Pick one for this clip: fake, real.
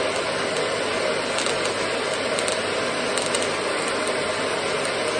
real